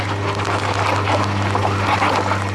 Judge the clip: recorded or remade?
recorded